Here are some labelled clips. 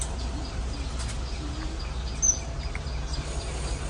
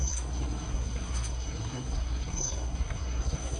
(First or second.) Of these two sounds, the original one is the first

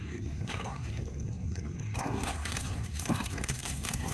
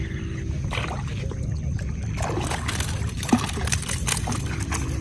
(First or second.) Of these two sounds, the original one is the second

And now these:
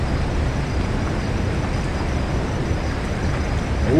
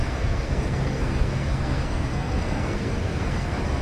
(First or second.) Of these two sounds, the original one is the first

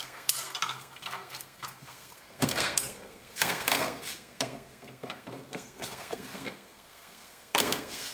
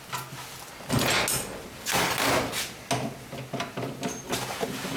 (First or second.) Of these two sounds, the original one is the second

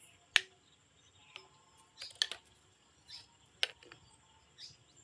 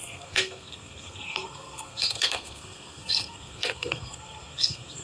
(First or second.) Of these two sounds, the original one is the first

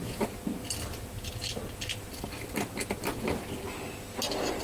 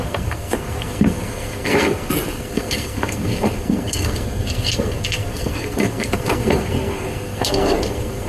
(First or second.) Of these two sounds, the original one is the first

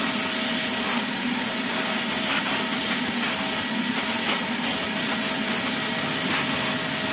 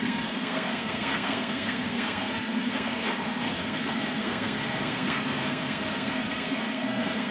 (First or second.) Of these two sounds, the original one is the first